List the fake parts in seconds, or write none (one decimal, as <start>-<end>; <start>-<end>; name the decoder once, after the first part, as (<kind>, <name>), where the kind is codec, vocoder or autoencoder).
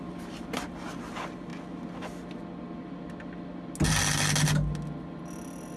none